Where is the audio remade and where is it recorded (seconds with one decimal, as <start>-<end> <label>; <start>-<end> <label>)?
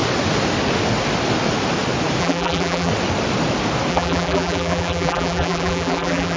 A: 0.0-2.2 recorded; 2.2-2.9 remade; 2.9-3.9 recorded; 3.9-6.4 remade